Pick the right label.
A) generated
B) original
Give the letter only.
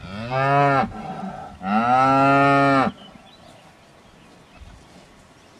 B